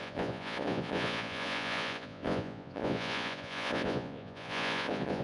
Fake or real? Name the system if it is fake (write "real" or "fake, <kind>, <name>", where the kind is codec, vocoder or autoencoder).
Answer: fake, vocoder, Vocos